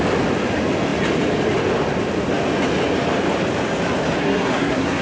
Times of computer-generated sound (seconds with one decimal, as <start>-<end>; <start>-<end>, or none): 4.2-5.0